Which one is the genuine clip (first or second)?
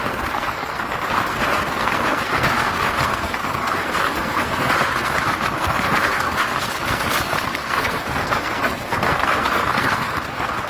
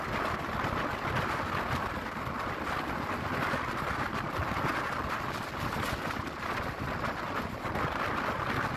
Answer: second